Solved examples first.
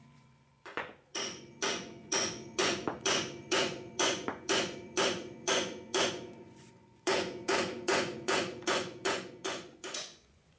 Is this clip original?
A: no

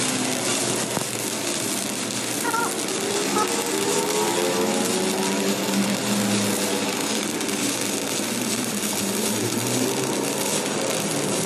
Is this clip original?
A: yes